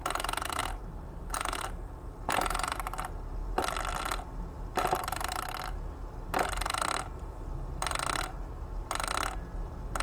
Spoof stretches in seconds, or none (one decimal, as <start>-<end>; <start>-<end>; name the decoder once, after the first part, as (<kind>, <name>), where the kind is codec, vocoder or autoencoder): none